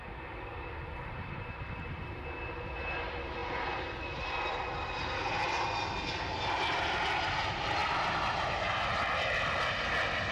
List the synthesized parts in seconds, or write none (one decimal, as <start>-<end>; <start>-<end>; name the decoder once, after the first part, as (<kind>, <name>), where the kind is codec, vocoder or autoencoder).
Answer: none